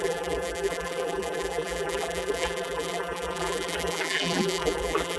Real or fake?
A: fake